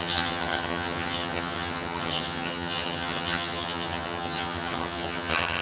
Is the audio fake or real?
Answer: fake